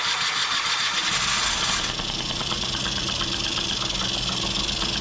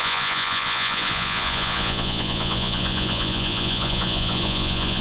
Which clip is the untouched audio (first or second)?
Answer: first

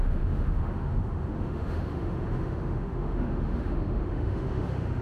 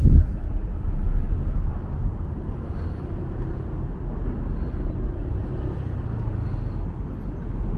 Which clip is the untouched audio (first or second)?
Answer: second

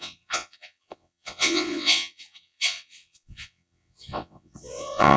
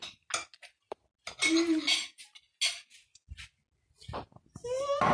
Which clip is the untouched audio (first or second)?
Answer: second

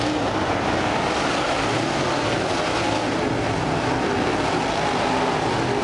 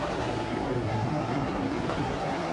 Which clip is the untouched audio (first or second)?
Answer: first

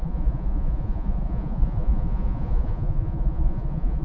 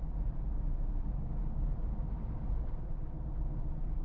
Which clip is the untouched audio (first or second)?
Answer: second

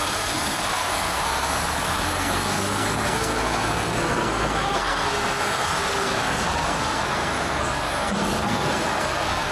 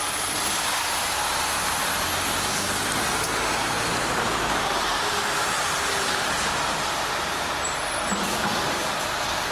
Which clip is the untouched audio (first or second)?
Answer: second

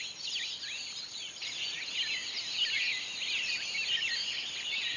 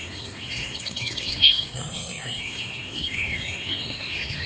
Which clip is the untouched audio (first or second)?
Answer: first